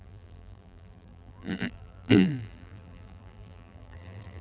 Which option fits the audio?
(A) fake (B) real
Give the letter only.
A